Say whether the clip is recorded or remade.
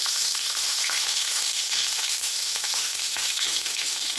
remade